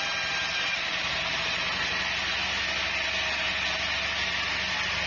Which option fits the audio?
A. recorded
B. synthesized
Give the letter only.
A